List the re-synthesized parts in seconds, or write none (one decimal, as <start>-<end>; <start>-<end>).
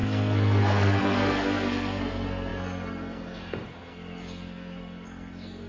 0.0-5.7